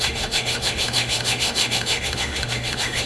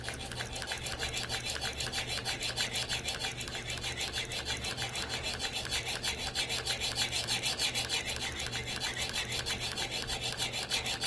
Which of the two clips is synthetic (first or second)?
first